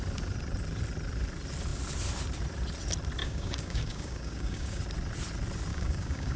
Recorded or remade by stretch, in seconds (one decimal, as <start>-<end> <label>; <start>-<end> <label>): 0.0-3.2 recorded; 3.2-4.8 remade; 4.8-5.7 recorded; 5.7-6.4 remade